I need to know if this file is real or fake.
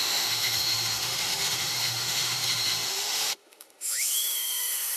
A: fake